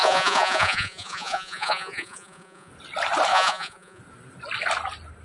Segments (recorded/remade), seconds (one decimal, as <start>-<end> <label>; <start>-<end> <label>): 0.0-2.7 remade; 2.7-3.3 recorded; 3.3-4.0 remade; 4.0-5.2 recorded